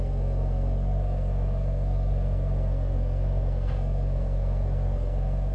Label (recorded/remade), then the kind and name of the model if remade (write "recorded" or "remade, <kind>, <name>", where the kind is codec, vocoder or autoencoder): remade, codec, SNAC